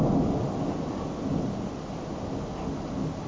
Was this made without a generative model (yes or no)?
yes